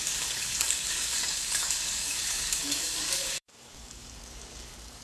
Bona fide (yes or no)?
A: no